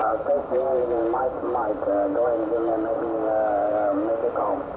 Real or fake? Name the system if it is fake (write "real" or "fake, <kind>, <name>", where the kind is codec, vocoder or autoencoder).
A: real